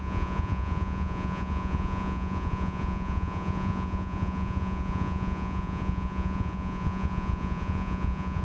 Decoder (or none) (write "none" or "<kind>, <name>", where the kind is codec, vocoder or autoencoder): vocoder, Vocos